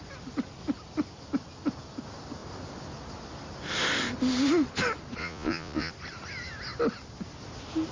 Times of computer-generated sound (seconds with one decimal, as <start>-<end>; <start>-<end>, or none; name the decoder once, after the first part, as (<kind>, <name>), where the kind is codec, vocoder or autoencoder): 5.2-5.9 (vocoder, Vocos)